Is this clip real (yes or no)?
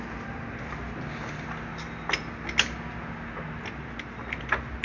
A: yes